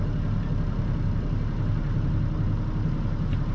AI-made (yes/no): no